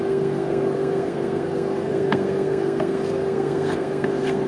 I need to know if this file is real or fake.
fake